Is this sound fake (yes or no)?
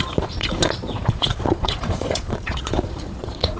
yes